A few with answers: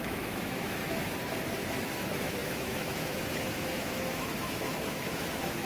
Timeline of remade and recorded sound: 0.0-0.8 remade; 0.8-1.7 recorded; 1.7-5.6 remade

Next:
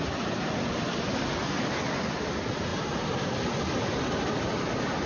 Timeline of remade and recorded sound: 0.0-5.1 recorded

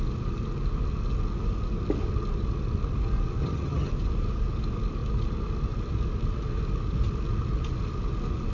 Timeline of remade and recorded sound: 0.0-3.4 recorded; 3.4-3.9 remade; 3.9-8.5 recorded

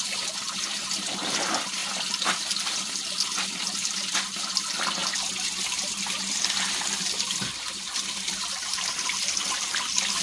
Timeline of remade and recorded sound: 0.0-1.8 remade; 1.8-4.5 recorded; 4.5-5.0 remade; 5.0-5.6 recorded; 5.6-10.2 remade

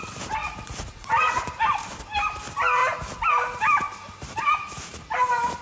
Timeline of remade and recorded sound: 0.0-0.4 recorded; 0.4-1.6 remade; 1.6-5.6 recorded

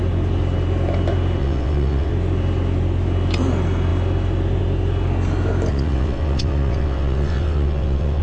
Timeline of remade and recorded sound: 0.0-1.4 recorded; 1.4-2.1 remade; 2.1-5.7 recorded; 5.7-8.2 remade

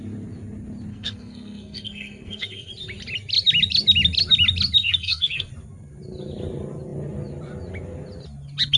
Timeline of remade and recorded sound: 0.0-0.9 recorded; 0.9-2.7 remade; 2.7-4.8 recorded; 4.8-5.5 remade; 5.5-8.8 recorded